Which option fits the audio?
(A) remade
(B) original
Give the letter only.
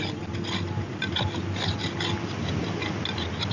B